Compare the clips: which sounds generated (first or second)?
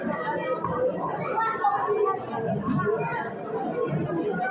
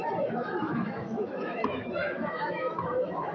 second